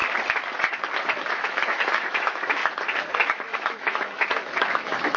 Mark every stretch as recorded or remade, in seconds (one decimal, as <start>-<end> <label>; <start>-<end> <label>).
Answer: 0.0-1.3 recorded; 1.3-2.6 remade; 2.6-3.1 recorded; 3.1-5.2 remade